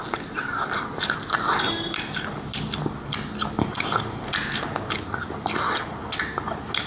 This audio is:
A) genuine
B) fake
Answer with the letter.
A